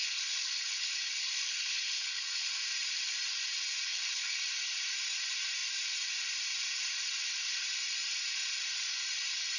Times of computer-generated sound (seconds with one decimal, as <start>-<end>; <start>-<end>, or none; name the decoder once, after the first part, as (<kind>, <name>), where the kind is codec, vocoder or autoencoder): 0.0-2.6 (codec, HILCodec); 3.9-4.4